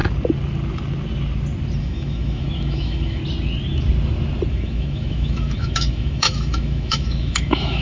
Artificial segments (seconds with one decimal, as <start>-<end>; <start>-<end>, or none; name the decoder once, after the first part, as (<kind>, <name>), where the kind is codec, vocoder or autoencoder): 1.8-3.2 (autoencoder, DAC-VAE); 4.5-7.8